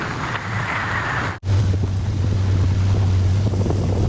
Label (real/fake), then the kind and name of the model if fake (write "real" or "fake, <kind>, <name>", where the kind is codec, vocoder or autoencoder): real